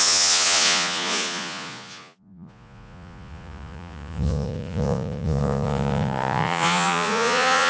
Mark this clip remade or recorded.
remade